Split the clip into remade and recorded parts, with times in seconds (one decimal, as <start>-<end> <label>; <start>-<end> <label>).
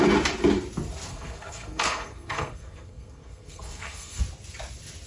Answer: 0.0-1.1 recorded; 1.1-4.2 remade; 4.2-5.1 recorded